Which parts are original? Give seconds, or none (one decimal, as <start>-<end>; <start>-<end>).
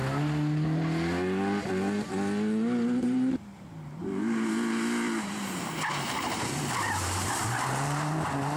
0.0-3.0